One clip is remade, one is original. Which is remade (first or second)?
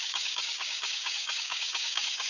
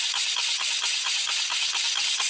first